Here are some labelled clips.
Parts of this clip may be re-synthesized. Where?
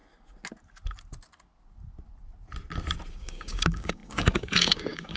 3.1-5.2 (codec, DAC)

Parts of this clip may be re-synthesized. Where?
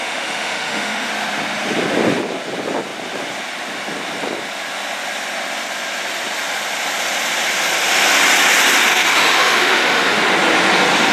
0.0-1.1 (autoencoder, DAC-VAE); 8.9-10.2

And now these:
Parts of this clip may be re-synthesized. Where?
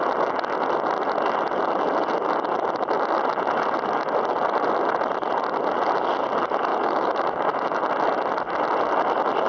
6.7-7.8 (autoencoder, DAC-VAE)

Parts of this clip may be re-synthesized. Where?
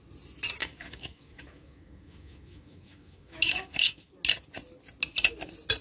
0.6-4.1 (autoencoder, DAC-VAE)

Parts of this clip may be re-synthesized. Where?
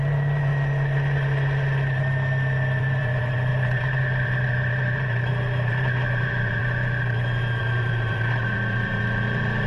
0.0-0.5 (vocoder, BigVGAN v2); 2.8-6.6; 7.6-9.7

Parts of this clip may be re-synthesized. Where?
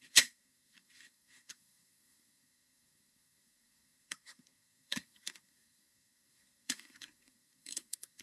0.0-8.2 (codec, SNAC)